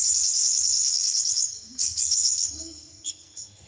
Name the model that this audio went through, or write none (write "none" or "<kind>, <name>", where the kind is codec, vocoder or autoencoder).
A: codec, SNAC